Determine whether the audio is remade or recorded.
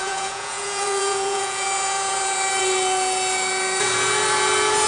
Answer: remade